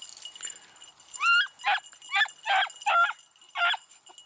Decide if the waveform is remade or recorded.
recorded